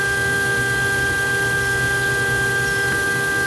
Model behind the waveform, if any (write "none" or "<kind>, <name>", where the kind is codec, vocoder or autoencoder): none